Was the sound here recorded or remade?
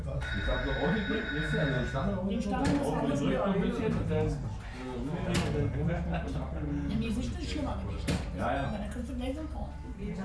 recorded